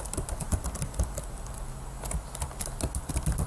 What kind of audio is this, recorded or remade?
recorded